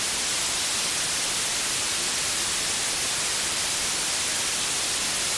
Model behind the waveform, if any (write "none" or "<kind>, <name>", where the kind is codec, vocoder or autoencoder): vocoder, BigVGAN v2